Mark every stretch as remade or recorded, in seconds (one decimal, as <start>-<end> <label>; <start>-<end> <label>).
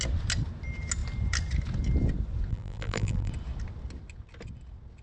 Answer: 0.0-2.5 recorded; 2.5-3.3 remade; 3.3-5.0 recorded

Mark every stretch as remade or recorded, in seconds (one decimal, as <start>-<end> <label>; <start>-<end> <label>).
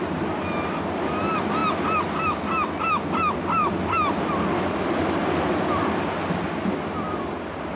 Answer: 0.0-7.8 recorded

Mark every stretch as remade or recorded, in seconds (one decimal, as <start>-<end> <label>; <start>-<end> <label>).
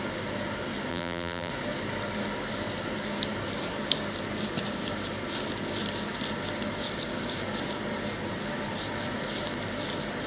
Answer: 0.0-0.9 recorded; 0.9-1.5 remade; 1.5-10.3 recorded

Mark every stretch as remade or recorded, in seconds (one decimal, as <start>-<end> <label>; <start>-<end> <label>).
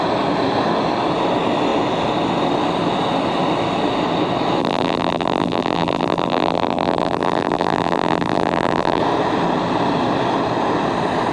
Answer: 0.0-4.6 recorded; 4.6-9.0 remade; 9.0-11.3 recorded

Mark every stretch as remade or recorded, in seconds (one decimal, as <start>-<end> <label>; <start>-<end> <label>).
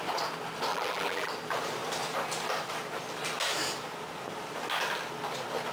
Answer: 0.0-0.7 recorded; 0.7-1.3 remade; 1.3-5.7 recorded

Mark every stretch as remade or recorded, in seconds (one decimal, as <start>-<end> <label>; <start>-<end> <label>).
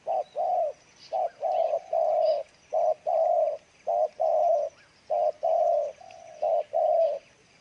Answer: 0.0-7.6 recorded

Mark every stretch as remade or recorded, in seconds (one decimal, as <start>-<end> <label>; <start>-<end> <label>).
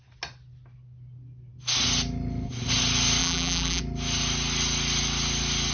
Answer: 0.0-3.2 recorded; 3.2-3.8 remade; 3.8-5.7 recorded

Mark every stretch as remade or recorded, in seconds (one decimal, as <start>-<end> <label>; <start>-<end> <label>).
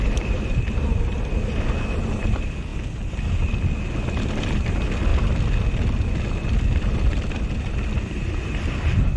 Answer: 0.0-9.2 recorded